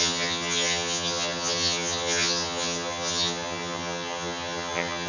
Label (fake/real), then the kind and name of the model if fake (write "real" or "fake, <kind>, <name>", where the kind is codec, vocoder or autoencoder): fake, vocoder, HiFi-GAN